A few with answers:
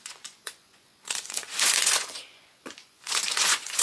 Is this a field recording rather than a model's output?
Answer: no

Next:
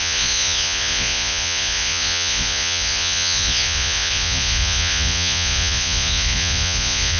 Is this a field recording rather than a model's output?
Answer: no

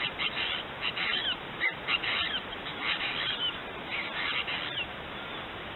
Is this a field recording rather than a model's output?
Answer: yes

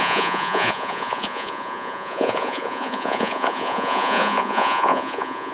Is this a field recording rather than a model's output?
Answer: no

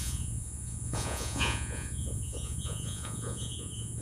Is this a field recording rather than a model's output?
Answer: no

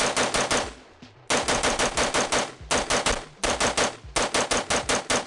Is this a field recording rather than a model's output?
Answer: yes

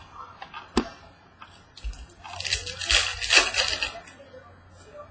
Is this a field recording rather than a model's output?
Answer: yes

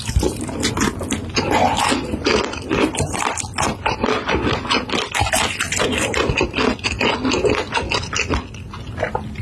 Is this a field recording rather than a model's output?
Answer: yes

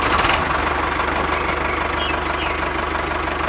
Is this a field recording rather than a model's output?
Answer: yes